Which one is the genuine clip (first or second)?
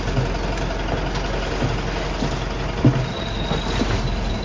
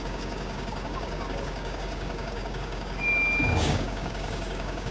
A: first